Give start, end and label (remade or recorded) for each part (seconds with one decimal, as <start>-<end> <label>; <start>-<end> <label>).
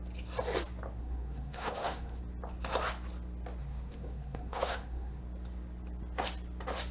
0.0-1.0 recorded; 1.0-2.2 remade; 2.2-3.6 recorded; 3.6-5.2 remade; 5.2-6.9 recorded